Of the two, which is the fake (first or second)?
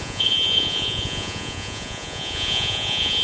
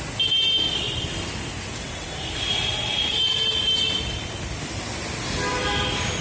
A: first